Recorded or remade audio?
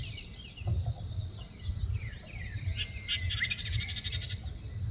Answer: remade